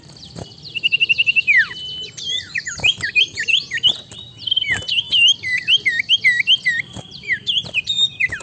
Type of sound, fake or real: real